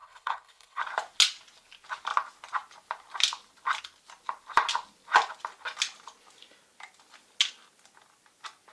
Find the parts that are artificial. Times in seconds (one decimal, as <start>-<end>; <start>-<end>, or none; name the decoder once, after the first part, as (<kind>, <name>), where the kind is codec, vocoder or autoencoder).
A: 0.0-0.8 (codec, HILCodec)